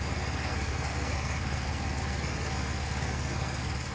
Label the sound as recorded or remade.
remade